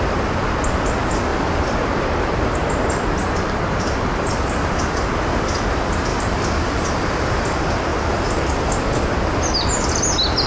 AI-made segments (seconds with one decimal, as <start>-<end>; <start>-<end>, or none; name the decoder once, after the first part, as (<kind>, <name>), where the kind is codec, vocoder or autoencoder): 1.3-2.7 (vocoder, BigVGAN v2); 3.2-4.6; 6.1-6.8